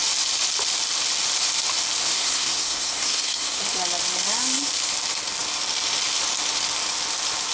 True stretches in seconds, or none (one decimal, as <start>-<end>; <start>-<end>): 0.0-2.0; 3.6-7.5